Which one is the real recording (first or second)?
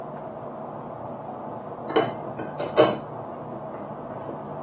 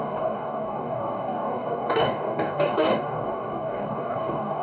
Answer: first